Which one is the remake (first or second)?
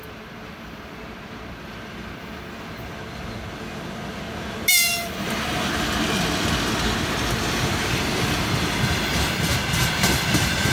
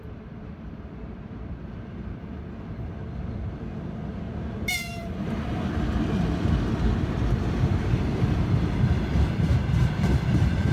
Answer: second